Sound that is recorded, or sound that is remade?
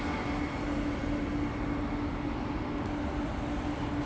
recorded